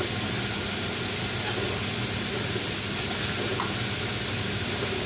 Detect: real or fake real